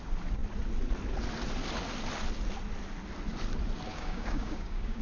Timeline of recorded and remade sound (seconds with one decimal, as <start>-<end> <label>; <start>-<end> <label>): 0.0-3.9 recorded; 3.9-5.0 remade